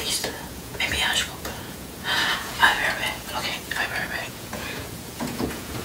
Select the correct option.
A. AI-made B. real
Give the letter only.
A